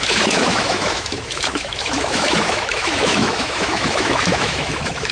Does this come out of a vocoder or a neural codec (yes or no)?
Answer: yes